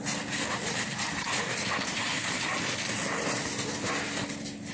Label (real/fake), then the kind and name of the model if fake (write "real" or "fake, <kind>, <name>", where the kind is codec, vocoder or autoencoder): real